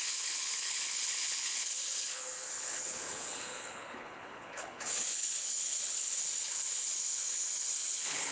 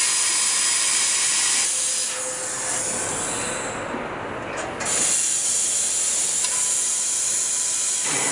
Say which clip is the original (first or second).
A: second